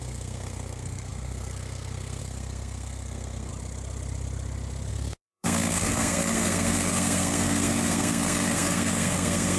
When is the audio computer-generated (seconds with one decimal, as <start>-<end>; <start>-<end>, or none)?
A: 0.0-3.5; 4.9-9.6